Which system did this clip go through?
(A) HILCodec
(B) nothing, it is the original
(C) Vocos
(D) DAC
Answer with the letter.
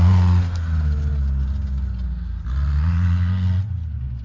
B